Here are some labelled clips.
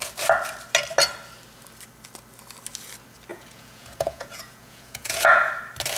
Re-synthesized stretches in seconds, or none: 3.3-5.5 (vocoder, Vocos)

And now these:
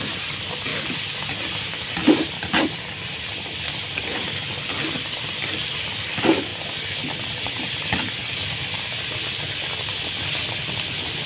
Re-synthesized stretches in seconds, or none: none

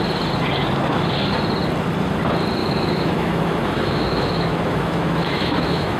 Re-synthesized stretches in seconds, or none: 2.6-6.0 (autoencoder, DAC-VAE)

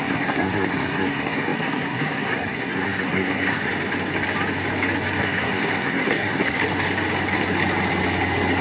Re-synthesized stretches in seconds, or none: 0.0-3.7 (codec, SNAC); 5.2-6.6

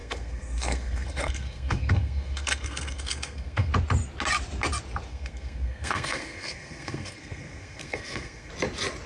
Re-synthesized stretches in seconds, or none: 0.0-3.7 (codec, SNAC); 5.1-8.5

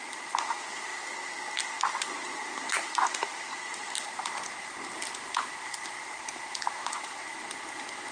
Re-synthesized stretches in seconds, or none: 6.8-7.5 (vocoder, BigVGAN v2)

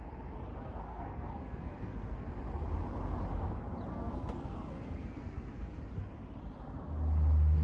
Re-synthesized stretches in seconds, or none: 0.5-2.3 (codec, SNAC); 3.9-5.8